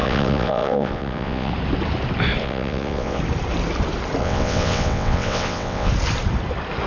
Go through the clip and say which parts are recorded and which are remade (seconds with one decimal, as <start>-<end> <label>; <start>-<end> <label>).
0.0-1.5 remade; 1.5-2.4 recorded; 2.4-3.2 remade; 3.2-4.2 recorded; 4.2-5.9 remade; 5.9-6.9 recorded